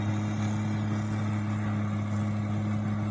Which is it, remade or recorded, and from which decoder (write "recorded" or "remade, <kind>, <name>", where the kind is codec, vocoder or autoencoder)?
recorded